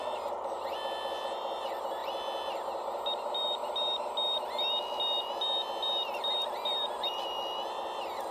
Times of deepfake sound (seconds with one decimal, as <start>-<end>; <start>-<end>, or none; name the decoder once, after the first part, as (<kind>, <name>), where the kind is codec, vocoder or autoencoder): none